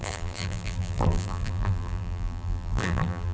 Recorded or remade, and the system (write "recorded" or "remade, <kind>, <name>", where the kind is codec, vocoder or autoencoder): remade, vocoder, BigVGAN v2